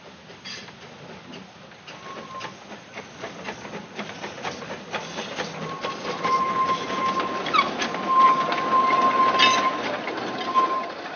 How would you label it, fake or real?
real